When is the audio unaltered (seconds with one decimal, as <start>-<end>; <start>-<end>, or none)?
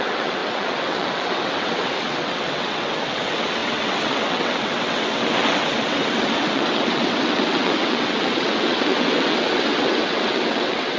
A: none